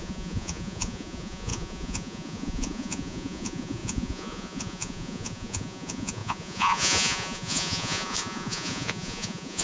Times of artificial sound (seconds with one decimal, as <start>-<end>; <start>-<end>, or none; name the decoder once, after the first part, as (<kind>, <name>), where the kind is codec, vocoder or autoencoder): 0.0-9.6 (vocoder, Vocos)